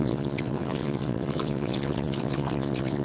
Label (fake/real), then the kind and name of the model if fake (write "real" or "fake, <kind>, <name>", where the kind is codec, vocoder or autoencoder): fake, vocoder, WaveNeXt